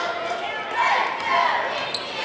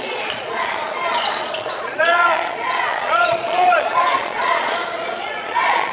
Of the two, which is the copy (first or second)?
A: second